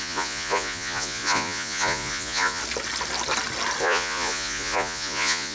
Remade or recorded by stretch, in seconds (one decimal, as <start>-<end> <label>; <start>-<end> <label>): 0.0-2.6 remade; 2.6-3.8 recorded; 3.8-5.5 remade